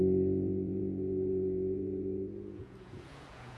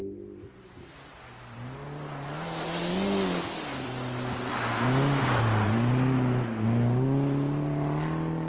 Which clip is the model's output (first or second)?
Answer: first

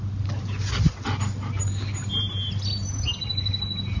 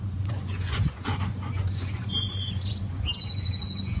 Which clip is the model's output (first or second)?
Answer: second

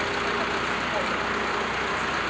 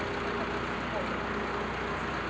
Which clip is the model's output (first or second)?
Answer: first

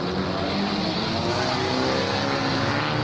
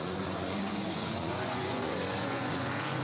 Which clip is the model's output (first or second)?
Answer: second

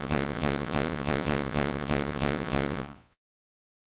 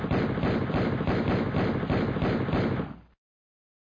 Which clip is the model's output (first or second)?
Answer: first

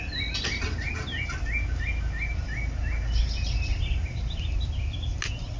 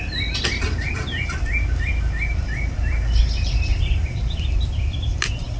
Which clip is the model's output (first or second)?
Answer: second